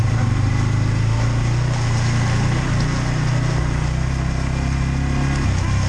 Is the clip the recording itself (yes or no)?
yes